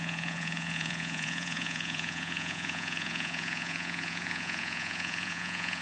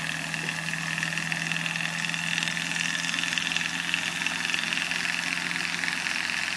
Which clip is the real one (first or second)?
second